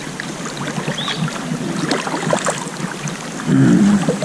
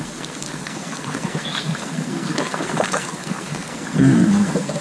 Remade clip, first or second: second